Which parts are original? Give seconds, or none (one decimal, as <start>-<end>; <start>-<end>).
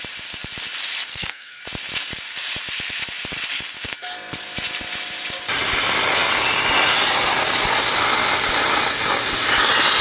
0.0-1.1; 1.6-10.0